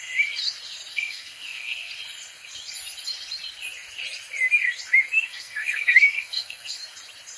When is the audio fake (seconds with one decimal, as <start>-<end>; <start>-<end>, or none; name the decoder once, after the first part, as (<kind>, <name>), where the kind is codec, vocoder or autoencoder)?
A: 0.9-1.9 (codec, SNAC); 5.3-6.8